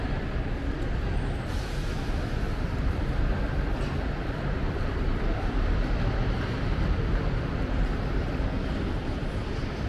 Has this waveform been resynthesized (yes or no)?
yes